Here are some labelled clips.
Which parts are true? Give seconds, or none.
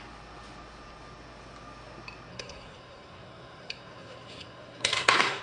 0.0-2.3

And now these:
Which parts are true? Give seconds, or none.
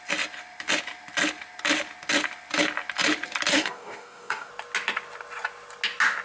0.0-3.5; 4.5-6.2